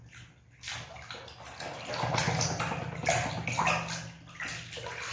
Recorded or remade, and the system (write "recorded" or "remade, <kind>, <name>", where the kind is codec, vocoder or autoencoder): recorded